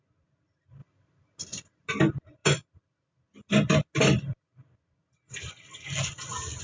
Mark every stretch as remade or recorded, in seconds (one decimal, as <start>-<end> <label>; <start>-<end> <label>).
0.0-6.6 recorded